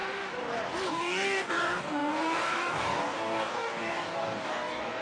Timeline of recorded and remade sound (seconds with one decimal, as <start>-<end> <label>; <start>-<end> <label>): 0.0-0.9 recorded; 0.9-5.0 remade